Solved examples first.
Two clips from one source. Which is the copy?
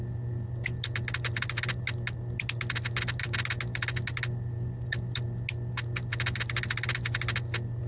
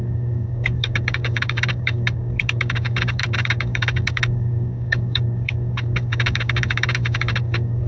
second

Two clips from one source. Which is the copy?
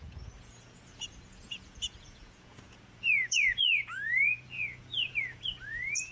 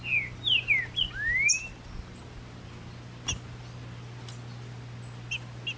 first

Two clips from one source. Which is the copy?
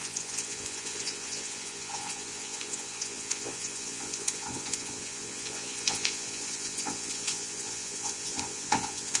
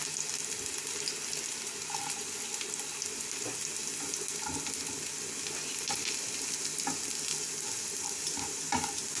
first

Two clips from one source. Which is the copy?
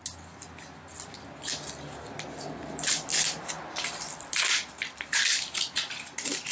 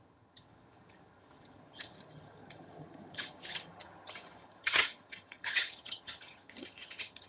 second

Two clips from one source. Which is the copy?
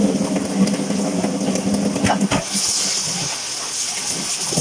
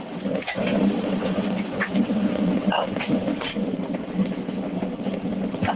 second